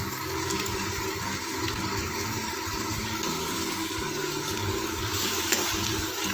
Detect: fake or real fake